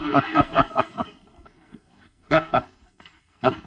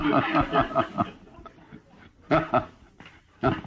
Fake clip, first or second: first